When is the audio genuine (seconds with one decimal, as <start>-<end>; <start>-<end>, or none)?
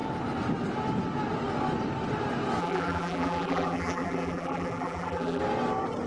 0.0-2.6; 5.4-6.1